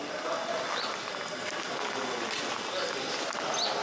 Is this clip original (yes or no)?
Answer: yes